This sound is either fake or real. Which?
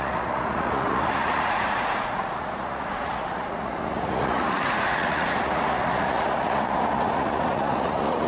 fake